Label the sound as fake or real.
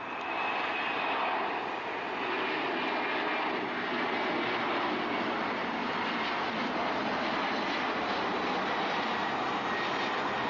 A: real